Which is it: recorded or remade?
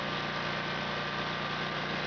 recorded